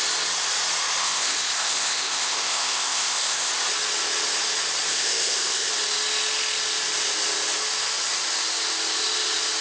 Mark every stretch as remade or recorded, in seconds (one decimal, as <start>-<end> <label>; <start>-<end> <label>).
0.0-1.0 recorded; 1.0-3.5 remade; 3.5-4.9 recorded; 4.9-5.7 remade; 5.7-9.6 recorded